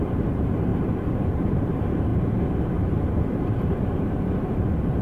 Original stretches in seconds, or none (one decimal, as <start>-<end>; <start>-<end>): 2.1-2.7